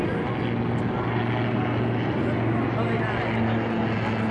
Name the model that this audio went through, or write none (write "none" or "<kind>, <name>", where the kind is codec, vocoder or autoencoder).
none